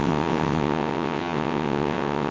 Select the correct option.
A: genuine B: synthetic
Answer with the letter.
B